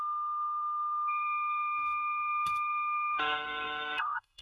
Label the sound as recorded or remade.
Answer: remade